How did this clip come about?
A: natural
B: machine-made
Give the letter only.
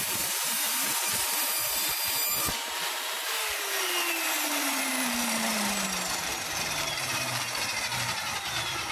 B